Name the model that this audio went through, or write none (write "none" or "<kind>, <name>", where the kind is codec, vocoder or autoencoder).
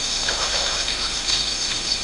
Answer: autoencoder, DAC-VAE